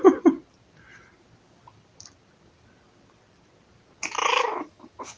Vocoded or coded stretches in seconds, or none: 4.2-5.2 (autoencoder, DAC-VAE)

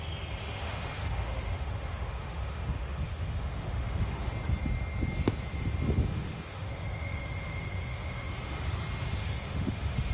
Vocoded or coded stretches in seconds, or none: 0.4-4.3 (autoencoder, DAC-VAE); 6.1-8.3; 9.2-10.1

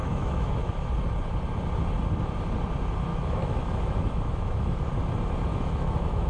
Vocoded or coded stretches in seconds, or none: 0.0-0.9 (autoencoder, DAC-VAE); 3.1-4.8; 5.5-6.3

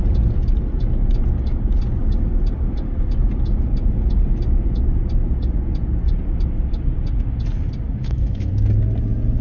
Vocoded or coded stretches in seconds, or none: 8.0-8.5 (autoencoder, DAC-VAE)

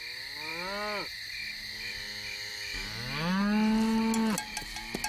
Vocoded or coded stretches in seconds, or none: none

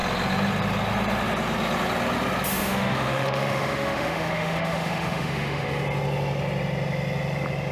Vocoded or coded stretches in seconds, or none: 2.5-5.8 (autoencoder, DAC-VAE)

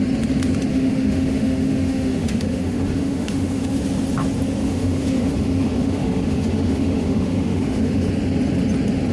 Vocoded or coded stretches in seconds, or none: 0.7-3.8 (autoencoder, DAC-VAE); 4.6-8.1

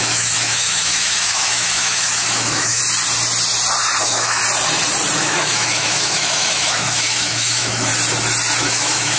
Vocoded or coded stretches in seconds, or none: 0.0-2.8 (autoencoder, DAC-VAE); 4.0-4.4; 5.2-7.9; 8.6-9.2